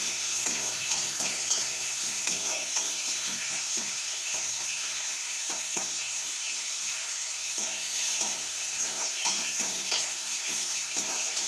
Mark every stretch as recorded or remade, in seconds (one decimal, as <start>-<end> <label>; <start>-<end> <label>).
0.0-11.5 remade